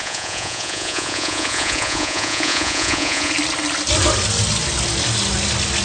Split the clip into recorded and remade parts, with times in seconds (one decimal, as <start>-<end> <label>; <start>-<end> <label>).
0.0-3.3 remade; 3.3-5.8 recorded